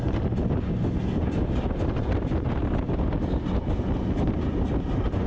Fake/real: real